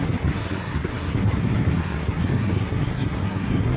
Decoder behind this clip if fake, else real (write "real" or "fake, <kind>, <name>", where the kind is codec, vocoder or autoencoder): fake, codec, SNAC